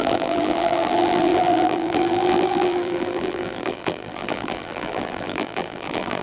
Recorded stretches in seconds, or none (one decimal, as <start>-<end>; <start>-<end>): none